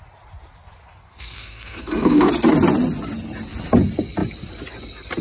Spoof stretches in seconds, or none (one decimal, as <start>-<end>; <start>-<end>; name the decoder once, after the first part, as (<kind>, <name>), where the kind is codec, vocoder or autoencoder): 1.0-2.3 (codec, SNAC)